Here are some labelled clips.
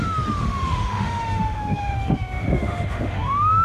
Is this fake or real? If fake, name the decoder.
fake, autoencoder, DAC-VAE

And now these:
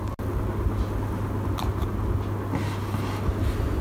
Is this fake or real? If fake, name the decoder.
real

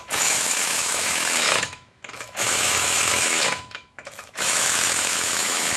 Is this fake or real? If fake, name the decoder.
fake, autoencoder, DAC-VAE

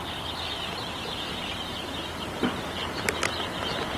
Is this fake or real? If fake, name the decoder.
real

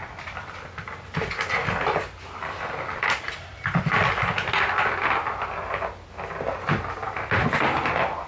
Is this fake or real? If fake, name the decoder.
real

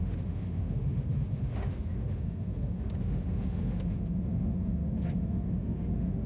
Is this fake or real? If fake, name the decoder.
fake, autoencoder, DAC-VAE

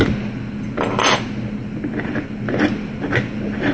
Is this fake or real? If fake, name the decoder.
real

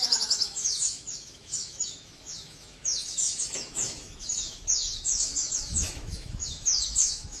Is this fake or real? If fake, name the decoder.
fake, autoencoder, DAC-VAE